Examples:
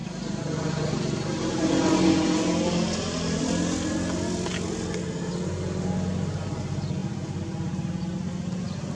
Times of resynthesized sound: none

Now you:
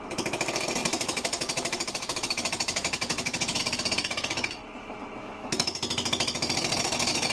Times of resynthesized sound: 0.0-4.6 (autoencoder, DAC-VAE); 5.2-7.3